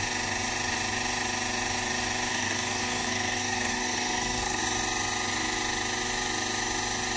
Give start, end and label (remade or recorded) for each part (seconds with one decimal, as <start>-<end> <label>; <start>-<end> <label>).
0.0-2.3 recorded; 2.3-4.6 remade; 4.6-7.2 recorded

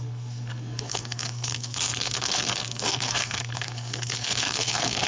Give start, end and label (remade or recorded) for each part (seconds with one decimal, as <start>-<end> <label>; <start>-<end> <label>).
0.0-5.1 remade

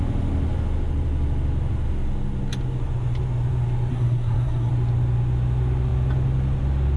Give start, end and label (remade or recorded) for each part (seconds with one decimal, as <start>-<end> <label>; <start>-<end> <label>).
0.0-3.9 recorded; 3.9-4.7 remade; 4.7-7.0 recorded

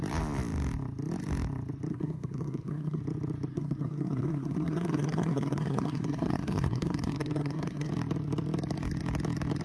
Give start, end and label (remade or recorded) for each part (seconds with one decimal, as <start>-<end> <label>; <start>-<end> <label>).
0.0-1.9 recorded; 1.9-3.0 remade; 3.0-3.5 recorded; 3.5-7.9 remade; 7.9-9.6 recorded

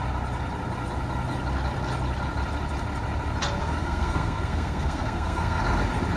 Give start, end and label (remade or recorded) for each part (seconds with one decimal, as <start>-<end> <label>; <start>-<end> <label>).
0.0-3.6 recorded; 3.6-5.6 remade; 5.6-6.2 recorded

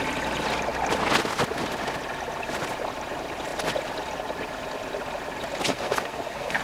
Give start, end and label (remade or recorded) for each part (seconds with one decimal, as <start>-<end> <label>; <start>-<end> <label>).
0.0-5.7 recorded; 5.7-6.6 remade

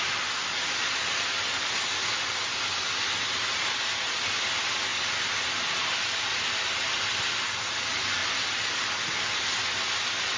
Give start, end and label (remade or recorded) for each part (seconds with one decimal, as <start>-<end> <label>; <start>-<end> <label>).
0.0-10.4 recorded

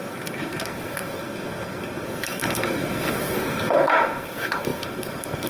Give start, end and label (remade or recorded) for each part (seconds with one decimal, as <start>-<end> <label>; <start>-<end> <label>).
0.0-5.5 remade